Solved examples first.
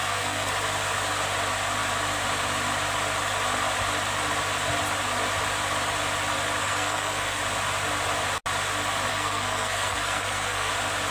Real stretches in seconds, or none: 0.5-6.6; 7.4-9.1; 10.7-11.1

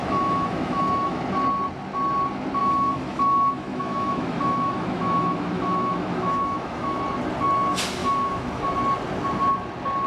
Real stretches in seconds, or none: 1.2-2.6; 7.0-8.0; 8.6-10.1

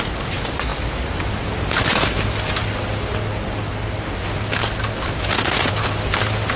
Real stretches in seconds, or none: 0.0-6.6

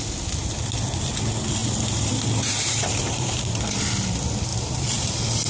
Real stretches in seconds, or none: 0.0-1.6; 3.5-4.5; 5.1-5.5

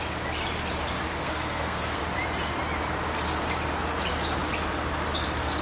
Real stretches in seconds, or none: 0.0-1.2; 2.0-5.6